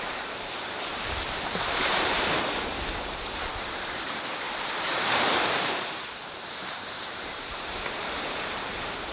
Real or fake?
fake